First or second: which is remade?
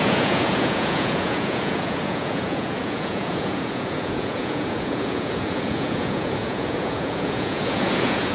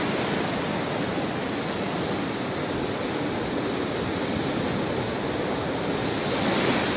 first